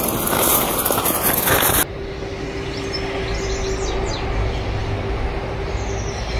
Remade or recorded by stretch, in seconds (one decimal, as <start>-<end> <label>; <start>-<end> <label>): 0.0-6.4 recorded